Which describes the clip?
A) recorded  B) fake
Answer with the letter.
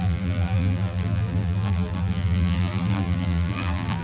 B